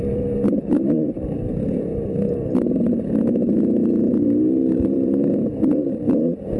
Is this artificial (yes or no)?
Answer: yes